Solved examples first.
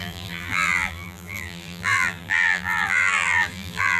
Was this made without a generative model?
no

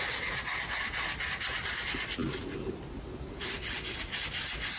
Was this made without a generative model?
yes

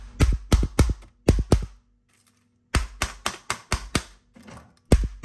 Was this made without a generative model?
yes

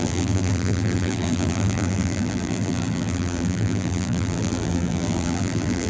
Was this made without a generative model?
no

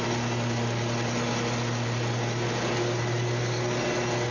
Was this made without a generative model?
yes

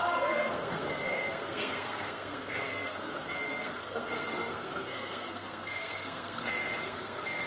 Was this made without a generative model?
no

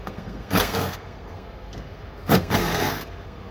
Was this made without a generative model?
no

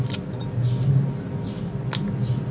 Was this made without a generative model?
yes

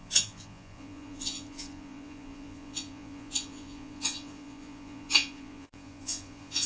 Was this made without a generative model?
no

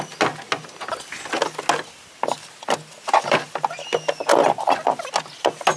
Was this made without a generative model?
yes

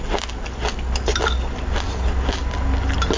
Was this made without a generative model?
yes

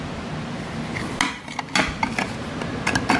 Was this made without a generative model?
yes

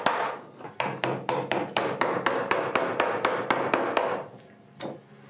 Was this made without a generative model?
yes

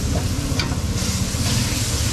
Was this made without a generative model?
yes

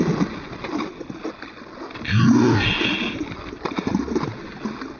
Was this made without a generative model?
yes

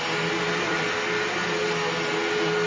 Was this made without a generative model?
yes